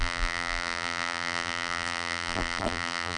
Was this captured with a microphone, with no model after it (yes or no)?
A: no